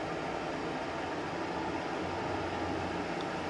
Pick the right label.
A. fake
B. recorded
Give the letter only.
B